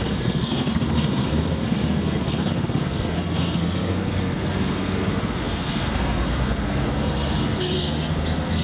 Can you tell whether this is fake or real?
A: fake